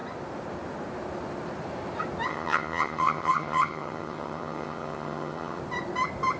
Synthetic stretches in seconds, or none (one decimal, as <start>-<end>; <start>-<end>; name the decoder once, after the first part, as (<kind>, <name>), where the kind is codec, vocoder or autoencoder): 2.3-5.6 (vocoder, HiFi-GAN)